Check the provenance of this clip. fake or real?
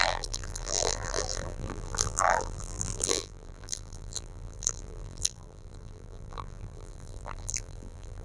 fake